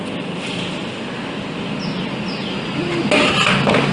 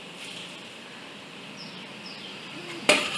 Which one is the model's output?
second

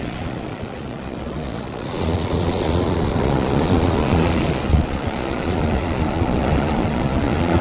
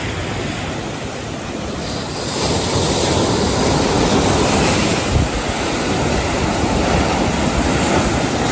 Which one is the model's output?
first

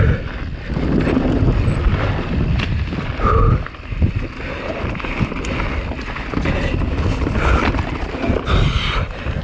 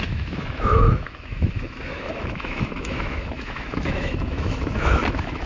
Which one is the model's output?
second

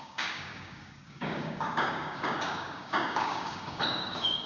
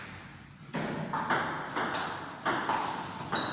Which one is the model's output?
first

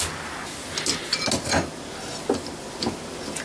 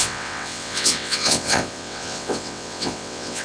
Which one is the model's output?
second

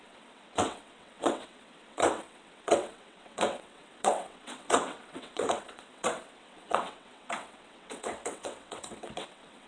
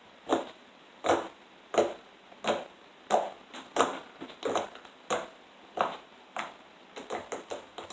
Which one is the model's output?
first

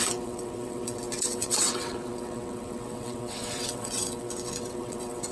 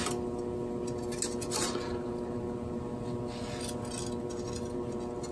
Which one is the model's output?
first